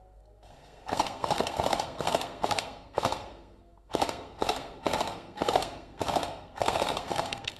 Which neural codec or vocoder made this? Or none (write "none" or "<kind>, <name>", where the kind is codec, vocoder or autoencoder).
codec, SNAC